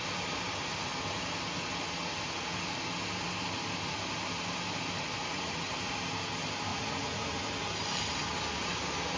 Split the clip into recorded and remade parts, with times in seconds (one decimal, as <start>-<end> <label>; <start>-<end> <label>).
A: 0.0-5.2 recorded; 5.2-5.7 remade; 5.7-6.7 recorded; 6.7-7.4 remade; 7.4-9.2 recorded